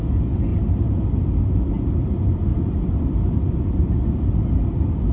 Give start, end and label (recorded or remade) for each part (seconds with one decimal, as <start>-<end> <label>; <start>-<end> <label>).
0.0-0.5 recorded; 0.5-1.3 remade; 1.3-2.5 recorded; 2.5-4.1 remade; 4.1-5.1 recorded